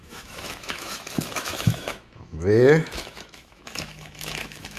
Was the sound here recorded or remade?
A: remade